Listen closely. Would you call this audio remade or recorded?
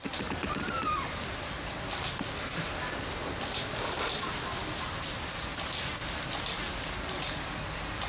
recorded